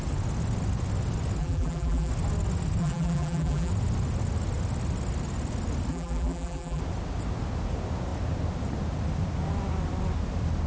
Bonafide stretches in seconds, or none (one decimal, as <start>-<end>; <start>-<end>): 0.0-1.4; 2.1-2.8; 3.7-5.9; 6.8-10.7